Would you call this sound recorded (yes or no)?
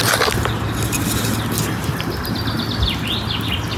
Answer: yes